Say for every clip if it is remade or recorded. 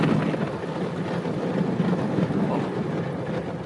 recorded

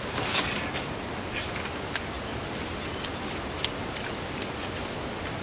recorded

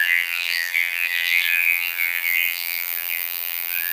remade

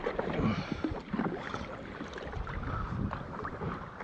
remade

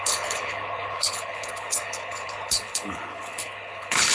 remade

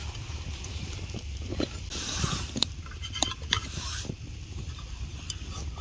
recorded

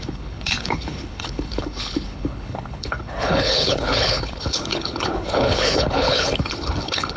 remade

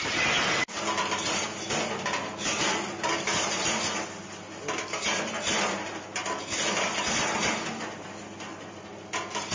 recorded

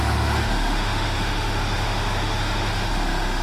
remade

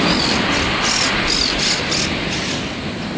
recorded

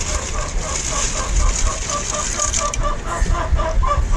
recorded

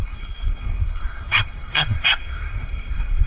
remade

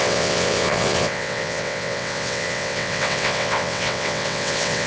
remade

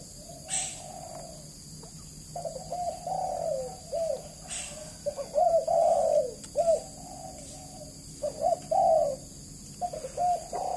recorded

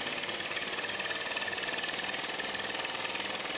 recorded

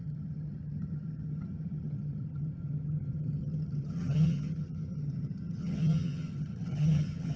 remade